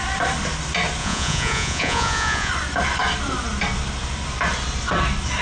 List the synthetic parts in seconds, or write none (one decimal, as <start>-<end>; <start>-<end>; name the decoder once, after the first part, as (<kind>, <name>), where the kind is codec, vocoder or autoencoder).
1.0-2.5 (vocoder, Vocos)

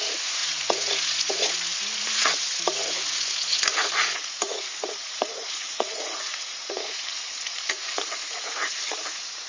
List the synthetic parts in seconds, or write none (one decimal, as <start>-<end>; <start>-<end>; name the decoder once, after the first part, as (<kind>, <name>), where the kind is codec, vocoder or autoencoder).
0.0-9.5 (vocoder, Vocos)

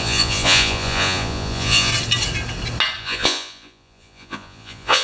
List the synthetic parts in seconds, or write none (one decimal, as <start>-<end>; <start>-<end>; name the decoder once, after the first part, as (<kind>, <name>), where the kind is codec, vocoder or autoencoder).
0.0-1.9 (vocoder, Vocos); 3.0-5.0

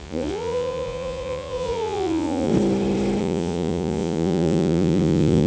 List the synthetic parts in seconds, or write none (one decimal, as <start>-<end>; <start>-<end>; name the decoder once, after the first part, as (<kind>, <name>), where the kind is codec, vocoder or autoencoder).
0.0-2.5 (vocoder, Vocos); 3.2-5.5

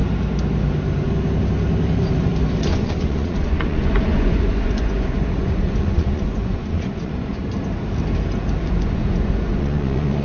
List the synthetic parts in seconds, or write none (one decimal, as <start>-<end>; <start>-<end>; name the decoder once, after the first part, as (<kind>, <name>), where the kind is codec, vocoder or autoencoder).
2.6-7.4 (vocoder, Vocos); 8.6-10.2